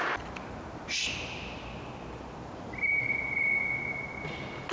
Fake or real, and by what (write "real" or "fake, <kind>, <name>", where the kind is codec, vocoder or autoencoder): real